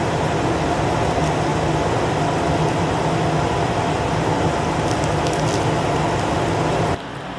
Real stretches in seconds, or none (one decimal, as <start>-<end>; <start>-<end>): 0.0-7.4